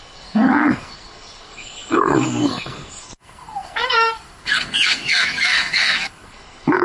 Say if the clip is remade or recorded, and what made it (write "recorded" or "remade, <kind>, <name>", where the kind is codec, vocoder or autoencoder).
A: remade, codec, SNAC